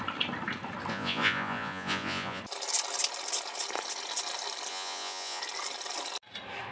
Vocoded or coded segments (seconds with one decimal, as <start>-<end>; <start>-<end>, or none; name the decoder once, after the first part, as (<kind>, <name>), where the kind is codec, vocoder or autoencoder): 0.9-2.4 (vocoder, Vocos); 4.7-5.4